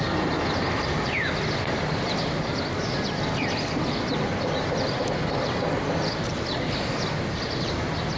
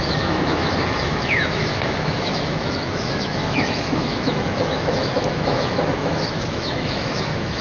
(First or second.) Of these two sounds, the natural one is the first